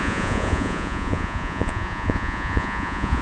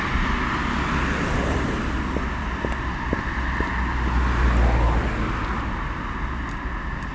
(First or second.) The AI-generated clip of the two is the first